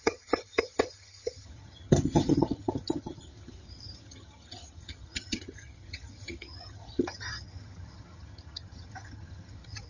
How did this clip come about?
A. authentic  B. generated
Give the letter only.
B